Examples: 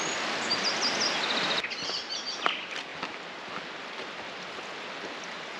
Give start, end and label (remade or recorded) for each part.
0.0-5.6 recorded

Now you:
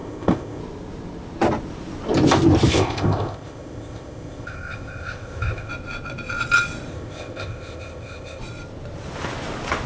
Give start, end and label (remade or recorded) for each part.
0.0-0.6 remade; 0.6-2.7 recorded; 2.7-5.7 remade; 5.7-6.9 recorded; 6.9-8.4 remade; 8.4-9.9 recorded

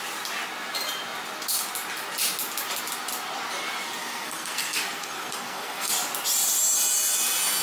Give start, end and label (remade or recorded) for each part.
0.0-4.0 recorded; 4.0-5.9 remade; 5.9-7.6 recorded

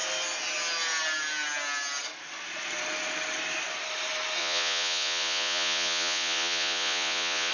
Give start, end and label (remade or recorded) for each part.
0.0-4.4 recorded; 4.4-7.5 remade